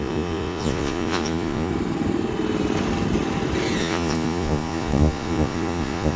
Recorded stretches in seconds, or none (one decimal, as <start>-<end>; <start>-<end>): 1.7-3.8